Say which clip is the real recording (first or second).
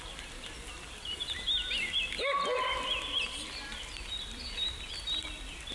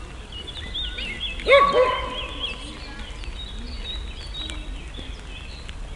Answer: second